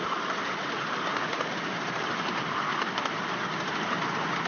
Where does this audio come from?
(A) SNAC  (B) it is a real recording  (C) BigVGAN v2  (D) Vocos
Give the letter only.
B